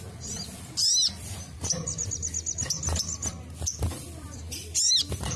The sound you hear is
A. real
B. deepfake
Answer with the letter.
A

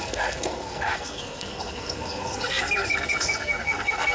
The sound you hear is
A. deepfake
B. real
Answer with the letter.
A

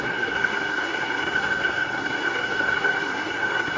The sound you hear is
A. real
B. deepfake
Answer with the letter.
B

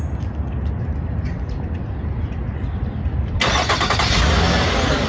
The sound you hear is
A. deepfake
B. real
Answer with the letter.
B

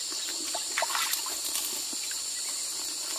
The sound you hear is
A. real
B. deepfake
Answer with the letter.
A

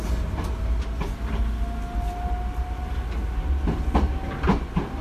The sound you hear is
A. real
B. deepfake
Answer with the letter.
A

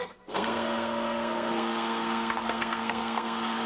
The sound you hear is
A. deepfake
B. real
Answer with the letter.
A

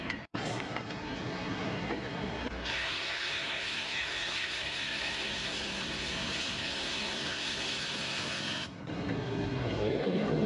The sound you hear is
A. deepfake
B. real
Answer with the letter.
A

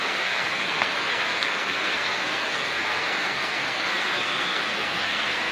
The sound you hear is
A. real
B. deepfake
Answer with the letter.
B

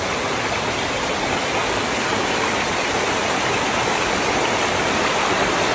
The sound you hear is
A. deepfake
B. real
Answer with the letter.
B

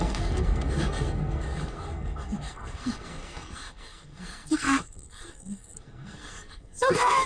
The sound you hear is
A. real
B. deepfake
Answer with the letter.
B